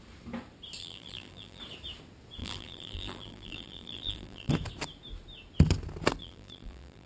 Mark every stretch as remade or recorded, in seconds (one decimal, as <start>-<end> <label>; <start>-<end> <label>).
0.0-0.8 recorded; 0.8-1.6 remade; 1.6-2.4 recorded; 2.4-4.5 remade; 4.5-6.2 recorded; 6.2-7.1 remade